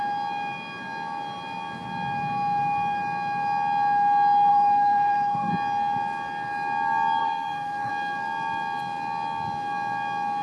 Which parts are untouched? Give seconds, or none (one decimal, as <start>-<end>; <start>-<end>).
0.0-4.5; 5.5-7.2; 7.9-10.4

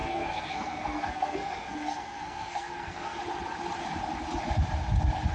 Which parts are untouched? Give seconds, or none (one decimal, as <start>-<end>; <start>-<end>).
3.2-5.3

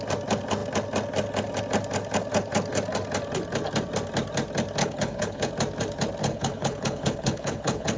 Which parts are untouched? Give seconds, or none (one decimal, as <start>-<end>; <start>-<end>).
0.0-4.8; 5.5-6.2

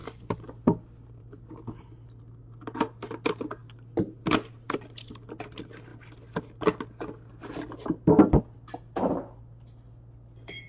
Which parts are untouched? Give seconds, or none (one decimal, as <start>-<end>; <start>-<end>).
0.0-10.7

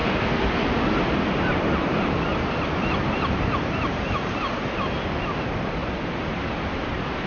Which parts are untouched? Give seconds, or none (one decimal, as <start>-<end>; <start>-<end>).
4.4-5.8

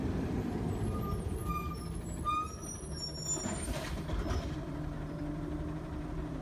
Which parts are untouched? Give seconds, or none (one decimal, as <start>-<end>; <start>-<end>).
0.0-6.4